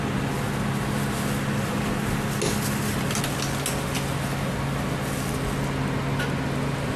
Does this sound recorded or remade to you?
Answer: recorded